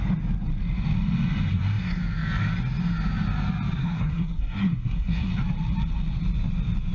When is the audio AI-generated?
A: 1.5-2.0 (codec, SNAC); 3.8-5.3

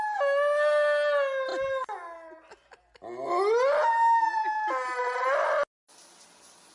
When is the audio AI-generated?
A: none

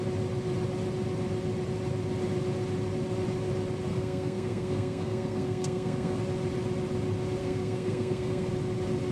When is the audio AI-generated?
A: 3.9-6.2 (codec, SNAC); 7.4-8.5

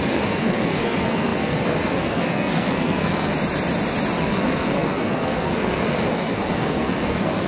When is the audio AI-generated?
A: 0.0-3.3 (codec, SNAC); 4.2-7.5